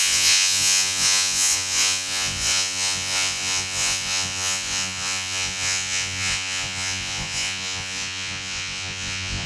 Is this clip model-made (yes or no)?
yes